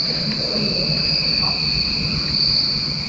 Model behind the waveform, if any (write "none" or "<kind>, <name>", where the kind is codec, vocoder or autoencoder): vocoder, BigVGAN v2